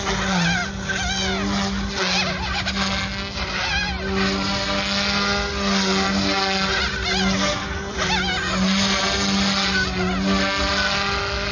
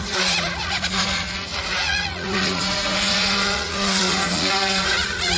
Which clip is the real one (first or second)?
first